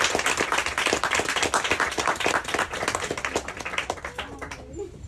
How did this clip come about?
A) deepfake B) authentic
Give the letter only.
B